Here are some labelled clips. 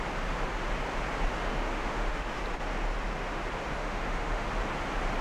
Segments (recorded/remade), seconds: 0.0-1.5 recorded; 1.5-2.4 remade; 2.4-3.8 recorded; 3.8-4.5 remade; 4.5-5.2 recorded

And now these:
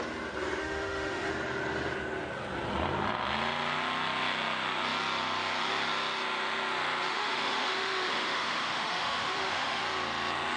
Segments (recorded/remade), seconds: 0.0-0.6 recorded; 0.6-1.3 remade; 1.3-7.1 recorded; 7.1-9.8 remade; 9.8-10.6 recorded

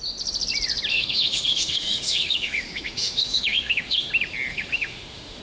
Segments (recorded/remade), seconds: 0.0-0.9 recorded; 0.9-4.1 remade; 4.1-4.5 recorded; 4.5-5.4 remade

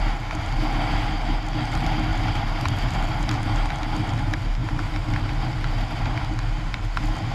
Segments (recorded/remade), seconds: 0.0-7.3 recorded

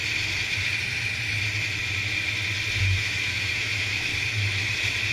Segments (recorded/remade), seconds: 0.0-2.8 recorded; 2.8-4.1 remade; 4.1-5.1 recorded

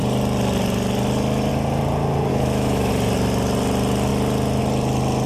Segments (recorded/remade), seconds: 0.0-2.3 recorded; 2.3-2.9 remade; 2.9-5.3 recorded

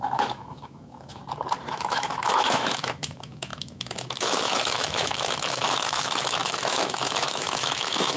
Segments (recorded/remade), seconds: 0.0-1.2 remade; 1.2-1.7 recorded; 1.7-8.2 remade

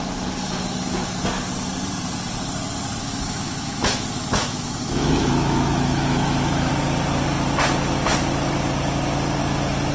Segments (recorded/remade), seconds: 0.0-3.0 recorded; 3.0-6.7 remade; 6.7-9.9 recorded